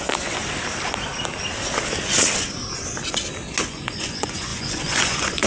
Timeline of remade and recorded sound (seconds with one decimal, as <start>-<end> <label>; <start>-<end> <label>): 0.0-0.4 remade; 0.4-3.7 recorded; 3.7-5.5 remade